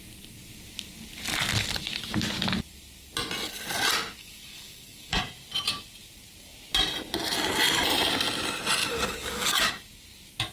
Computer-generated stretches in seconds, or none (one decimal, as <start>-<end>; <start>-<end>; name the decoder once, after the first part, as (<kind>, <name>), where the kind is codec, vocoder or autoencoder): 4.2-5.2 (codec, DAC); 8.8-9.7